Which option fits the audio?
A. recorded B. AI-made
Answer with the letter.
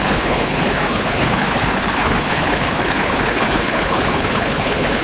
B